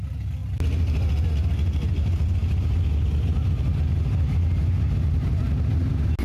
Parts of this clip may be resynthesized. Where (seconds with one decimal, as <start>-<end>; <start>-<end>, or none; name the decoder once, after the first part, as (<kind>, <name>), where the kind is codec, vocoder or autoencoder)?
none

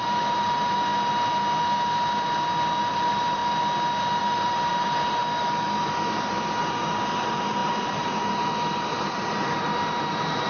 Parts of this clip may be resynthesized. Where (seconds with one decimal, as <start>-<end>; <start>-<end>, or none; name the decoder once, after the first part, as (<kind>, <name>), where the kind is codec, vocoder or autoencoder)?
0.0-0.9 (vocoder, BigVGAN v2); 2.9-3.4; 4.2-5.2; 6.6-10.5